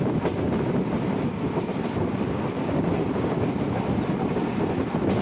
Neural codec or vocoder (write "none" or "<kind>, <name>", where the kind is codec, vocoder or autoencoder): none